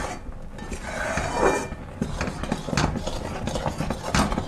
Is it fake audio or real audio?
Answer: real